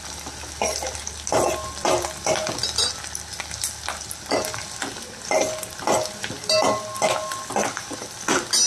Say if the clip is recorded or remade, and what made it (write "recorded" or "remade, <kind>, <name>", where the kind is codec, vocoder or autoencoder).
recorded